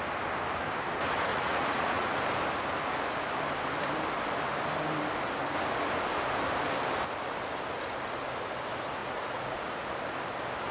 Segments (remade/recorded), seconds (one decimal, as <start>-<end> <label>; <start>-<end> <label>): 0.0-1.3 recorded; 1.3-2.1 remade; 2.1-9.0 recorded; 9.0-9.9 remade; 9.9-10.7 recorded